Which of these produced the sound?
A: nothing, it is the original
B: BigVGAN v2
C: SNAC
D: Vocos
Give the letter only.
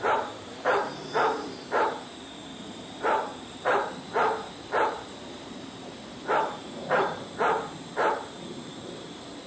B